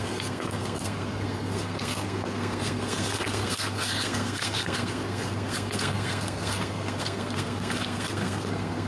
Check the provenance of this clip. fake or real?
fake